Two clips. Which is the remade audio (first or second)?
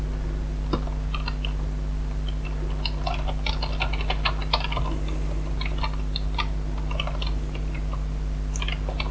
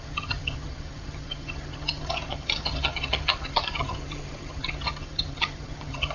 second